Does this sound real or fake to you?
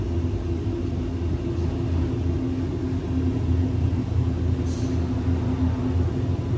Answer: real